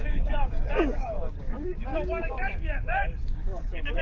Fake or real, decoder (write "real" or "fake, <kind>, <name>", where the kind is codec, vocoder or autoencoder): fake, codec, DAC